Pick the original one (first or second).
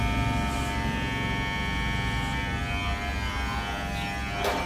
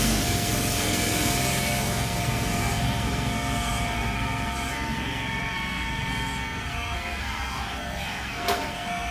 first